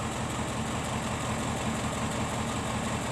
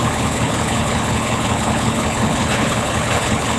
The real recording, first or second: first